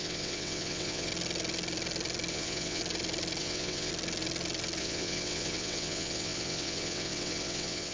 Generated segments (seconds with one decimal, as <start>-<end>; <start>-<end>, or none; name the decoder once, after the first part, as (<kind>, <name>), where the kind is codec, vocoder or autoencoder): 0.0-1.1 (vocoder, WaveNeXt); 2.3-2.8; 3.4-3.9; 4.8-7.9